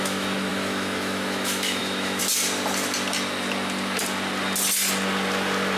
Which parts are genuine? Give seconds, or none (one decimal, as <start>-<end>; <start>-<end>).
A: 2.2-5.8